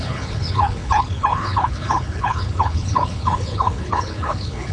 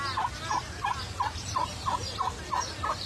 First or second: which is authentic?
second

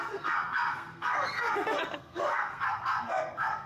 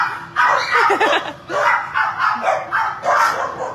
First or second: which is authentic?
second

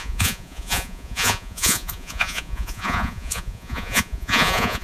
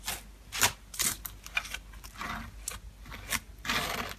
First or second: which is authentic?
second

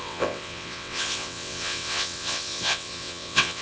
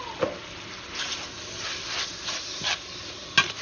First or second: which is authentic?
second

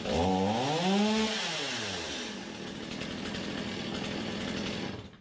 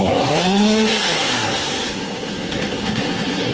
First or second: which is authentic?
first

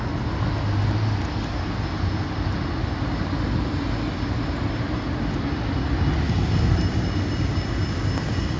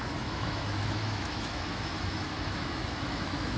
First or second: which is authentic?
first